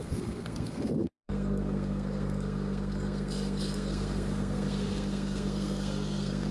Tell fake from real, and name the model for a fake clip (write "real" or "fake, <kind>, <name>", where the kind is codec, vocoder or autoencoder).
fake, codec, SNAC